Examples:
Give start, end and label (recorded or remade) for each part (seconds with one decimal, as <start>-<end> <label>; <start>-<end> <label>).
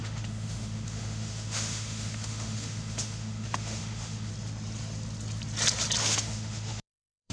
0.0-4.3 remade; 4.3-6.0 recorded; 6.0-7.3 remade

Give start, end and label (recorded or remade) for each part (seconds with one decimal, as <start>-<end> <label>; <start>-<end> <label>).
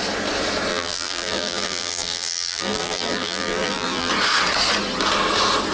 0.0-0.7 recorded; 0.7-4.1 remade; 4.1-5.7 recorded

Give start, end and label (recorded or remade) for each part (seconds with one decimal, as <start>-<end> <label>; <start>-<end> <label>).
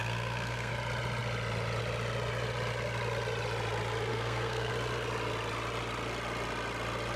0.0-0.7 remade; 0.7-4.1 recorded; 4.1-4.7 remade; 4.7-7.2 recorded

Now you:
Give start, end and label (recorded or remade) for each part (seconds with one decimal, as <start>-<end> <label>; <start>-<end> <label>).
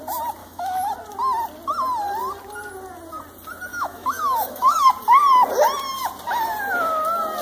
0.0-0.4 recorded; 0.4-0.9 remade; 0.9-3.7 recorded; 3.7-4.9 remade; 4.9-7.4 recorded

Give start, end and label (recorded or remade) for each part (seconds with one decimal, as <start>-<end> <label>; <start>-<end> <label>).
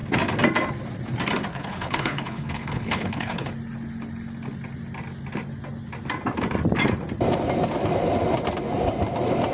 0.0-1.5 recorded; 1.5-3.5 remade; 3.5-9.5 recorded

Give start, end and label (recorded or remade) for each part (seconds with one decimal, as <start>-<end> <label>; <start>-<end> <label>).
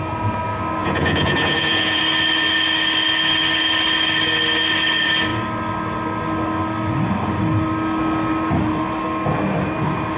0.0-0.8 recorded; 0.8-2.0 remade; 2.0-10.2 recorded